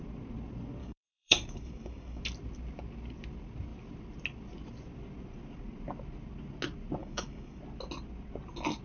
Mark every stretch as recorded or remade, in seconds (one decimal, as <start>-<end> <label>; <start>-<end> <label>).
0.0-0.8 recorded; 0.8-2.2 remade; 2.2-7.0 recorded; 7.0-7.6 remade; 7.6-8.8 recorded